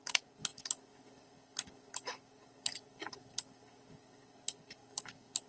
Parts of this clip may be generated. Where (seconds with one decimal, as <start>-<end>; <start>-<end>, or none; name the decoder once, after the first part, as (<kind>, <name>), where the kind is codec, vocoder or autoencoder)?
0.0-5.5 (codec, DAC)